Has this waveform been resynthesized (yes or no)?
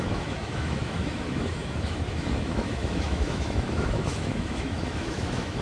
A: yes